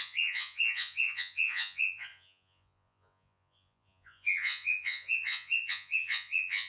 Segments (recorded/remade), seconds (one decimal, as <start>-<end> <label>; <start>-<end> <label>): 0.0-6.7 remade